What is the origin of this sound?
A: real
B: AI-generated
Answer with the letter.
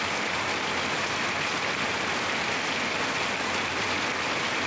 A